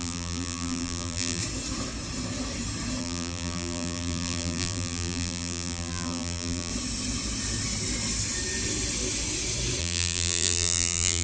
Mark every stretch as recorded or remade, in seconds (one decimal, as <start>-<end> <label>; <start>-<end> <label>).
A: 0.0-1.4 remade; 1.4-3.0 recorded; 3.0-6.7 remade; 6.7-9.8 recorded; 9.8-11.2 remade